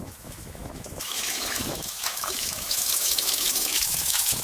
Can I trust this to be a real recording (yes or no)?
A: no